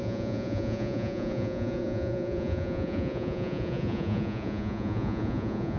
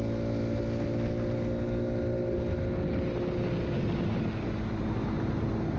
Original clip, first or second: second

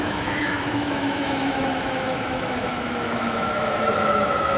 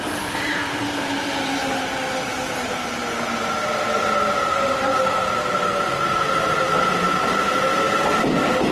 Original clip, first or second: second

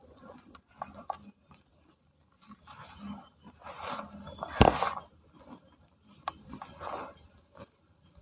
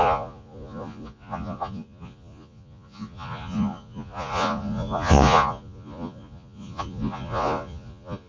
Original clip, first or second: first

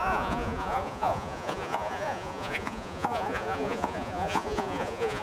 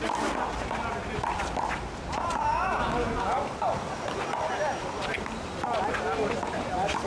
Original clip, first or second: second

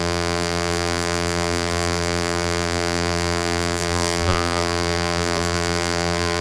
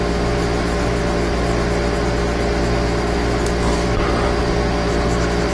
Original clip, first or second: second